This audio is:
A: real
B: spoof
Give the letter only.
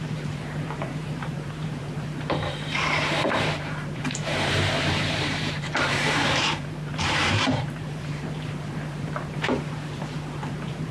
B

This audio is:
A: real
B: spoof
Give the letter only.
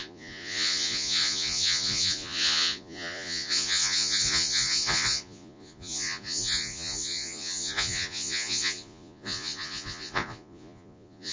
B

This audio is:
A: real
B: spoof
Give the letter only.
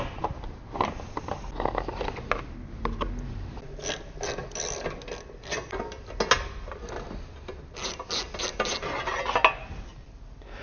A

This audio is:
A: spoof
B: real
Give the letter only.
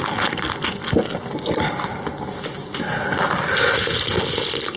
B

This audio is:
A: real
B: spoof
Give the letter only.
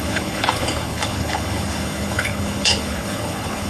B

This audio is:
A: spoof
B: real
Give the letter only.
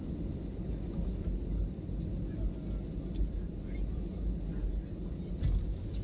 B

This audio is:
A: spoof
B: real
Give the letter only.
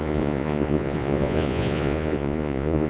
A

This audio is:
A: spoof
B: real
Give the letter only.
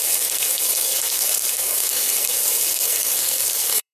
A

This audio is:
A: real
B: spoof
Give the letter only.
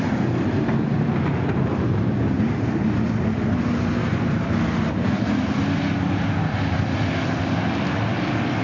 A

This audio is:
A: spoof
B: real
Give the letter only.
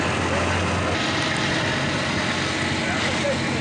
B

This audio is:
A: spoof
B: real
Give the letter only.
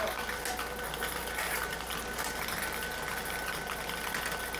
B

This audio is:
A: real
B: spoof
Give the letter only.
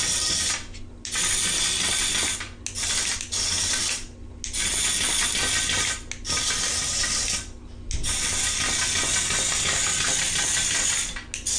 A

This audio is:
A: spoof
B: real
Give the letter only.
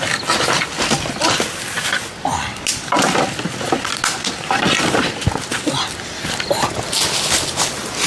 B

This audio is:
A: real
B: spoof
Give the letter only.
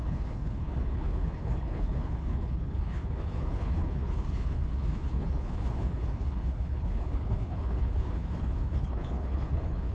B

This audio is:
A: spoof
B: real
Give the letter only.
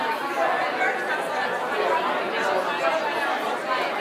B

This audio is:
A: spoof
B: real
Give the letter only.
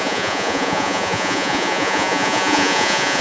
A